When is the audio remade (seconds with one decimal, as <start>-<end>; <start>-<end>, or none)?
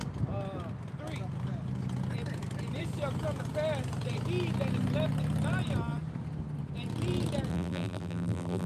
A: 7.5-8.7